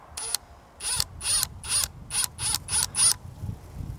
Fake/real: real